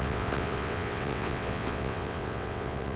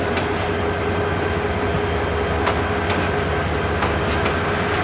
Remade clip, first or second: first